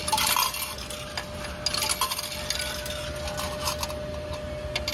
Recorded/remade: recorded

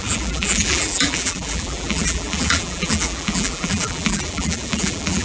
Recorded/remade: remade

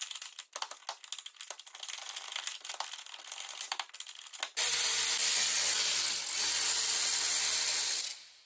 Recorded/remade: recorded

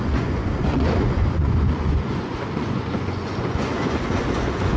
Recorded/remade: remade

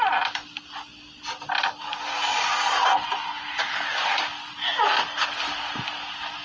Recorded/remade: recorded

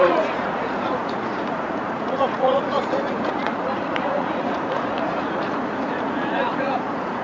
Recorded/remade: remade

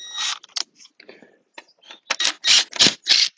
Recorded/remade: recorded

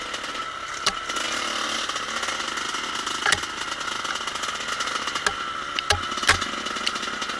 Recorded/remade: recorded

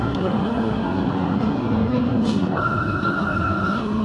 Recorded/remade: remade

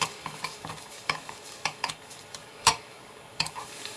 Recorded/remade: remade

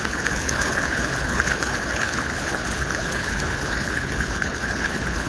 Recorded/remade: remade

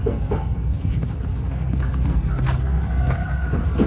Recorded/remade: remade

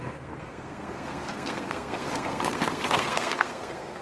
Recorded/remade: remade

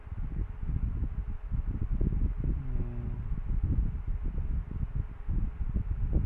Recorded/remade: recorded